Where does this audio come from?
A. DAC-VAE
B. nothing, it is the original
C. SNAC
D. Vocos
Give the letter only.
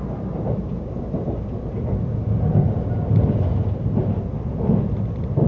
B